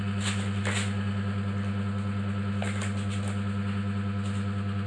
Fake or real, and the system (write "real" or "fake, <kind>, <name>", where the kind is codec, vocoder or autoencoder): real